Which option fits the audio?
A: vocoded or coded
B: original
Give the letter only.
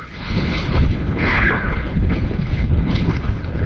A